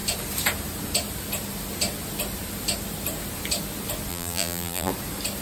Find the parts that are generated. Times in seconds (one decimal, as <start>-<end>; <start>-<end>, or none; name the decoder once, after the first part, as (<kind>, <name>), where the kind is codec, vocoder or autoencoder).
4.1-4.9 (vocoder, BigVGAN v2)